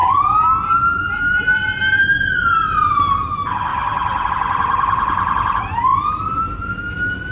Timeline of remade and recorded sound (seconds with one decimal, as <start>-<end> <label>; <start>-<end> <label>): 0.0-3.7 remade; 3.7-4.3 recorded; 4.3-7.3 remade